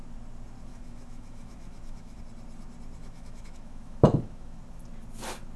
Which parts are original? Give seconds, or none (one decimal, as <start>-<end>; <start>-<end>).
0.0-0.7; 2.2-3.0; 4.6-5.6